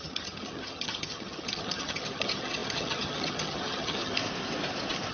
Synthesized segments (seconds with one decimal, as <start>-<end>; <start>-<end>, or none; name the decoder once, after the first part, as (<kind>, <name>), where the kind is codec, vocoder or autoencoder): 0.0-4.1 (vocoder, HiFi-GAN)